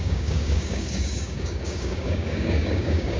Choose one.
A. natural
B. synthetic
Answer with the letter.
B